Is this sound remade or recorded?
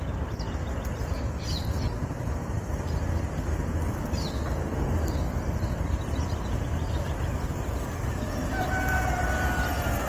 recorded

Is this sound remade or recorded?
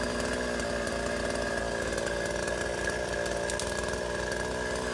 recorded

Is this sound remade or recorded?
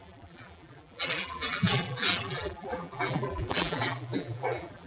remade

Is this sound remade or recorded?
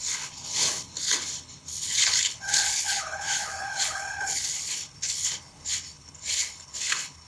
remade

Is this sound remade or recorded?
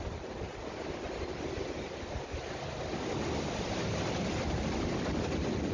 recorded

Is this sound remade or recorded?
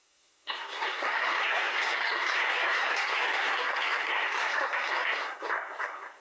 remade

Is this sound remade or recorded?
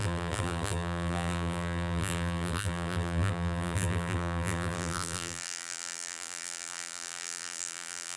remade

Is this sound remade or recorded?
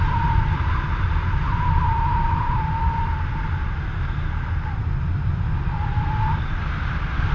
recorded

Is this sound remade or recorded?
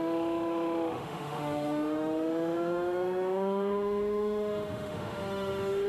remade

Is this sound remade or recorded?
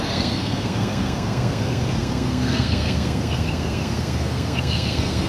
remade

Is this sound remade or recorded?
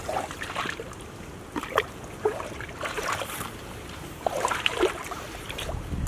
remade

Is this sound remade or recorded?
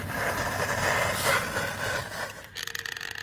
recorded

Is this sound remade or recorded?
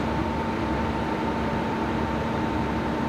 recorded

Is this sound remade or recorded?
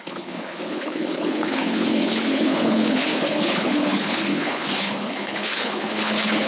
remade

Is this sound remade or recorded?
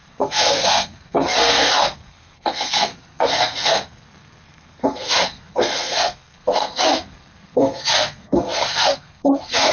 remade